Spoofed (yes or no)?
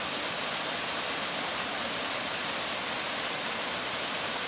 no